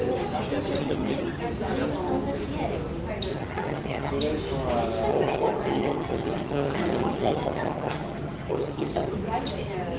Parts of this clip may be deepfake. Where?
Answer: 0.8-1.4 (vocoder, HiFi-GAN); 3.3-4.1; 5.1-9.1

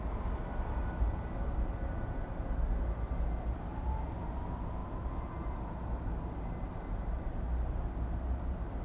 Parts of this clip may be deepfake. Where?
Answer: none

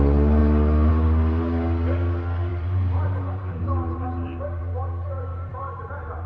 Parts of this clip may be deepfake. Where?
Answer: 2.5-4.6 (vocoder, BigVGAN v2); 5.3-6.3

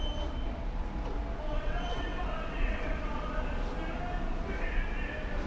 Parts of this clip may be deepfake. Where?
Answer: 1.5-3.3 (vocoder, WaveNeXt)

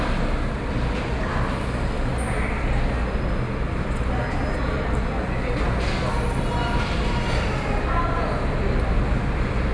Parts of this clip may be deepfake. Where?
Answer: none

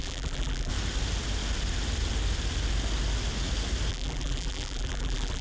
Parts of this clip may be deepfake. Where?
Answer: 0.0-0.7 (vocoder, BigVGAN v2); 3.9-5.4

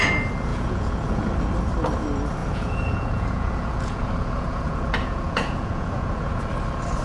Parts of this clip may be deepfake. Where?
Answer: 0.5-1.3 (vocoder, Vocos); 2.4-6.4